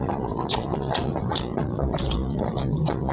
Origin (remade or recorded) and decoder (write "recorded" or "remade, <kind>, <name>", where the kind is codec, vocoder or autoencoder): remade, vocoder, Vocos